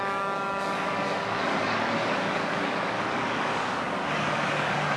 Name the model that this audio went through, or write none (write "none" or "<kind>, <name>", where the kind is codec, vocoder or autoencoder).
codec, DAC